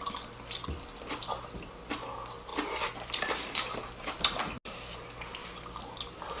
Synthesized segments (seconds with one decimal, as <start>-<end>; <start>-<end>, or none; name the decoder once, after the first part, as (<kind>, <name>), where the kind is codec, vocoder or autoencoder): none